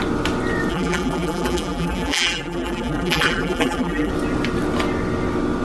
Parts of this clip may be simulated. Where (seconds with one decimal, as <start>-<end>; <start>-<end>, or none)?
0.7-4.1